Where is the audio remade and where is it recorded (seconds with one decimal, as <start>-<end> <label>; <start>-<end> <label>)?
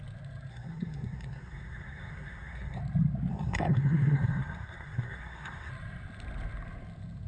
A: 0.0-0.5 recorded; 0.5-2.8 remade; 2.8-3.3 recorded; 3.3-5.7 remade; 5.7-7.3 recorded